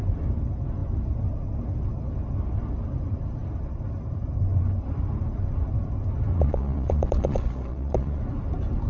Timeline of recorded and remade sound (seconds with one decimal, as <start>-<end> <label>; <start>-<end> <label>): 0.0-6.3 recorded; 6.3-8.2 remade; 8.2-8.9 recorded